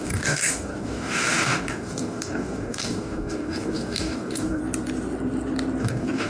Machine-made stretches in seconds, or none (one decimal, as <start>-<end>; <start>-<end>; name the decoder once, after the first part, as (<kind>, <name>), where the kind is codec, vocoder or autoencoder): 0.0-4.6 (codec, DAC); 5.8-6.3